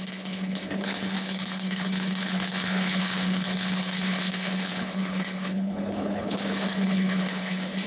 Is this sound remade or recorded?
remade